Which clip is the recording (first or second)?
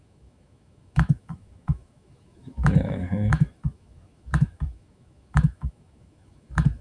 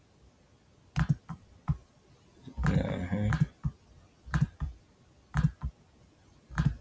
second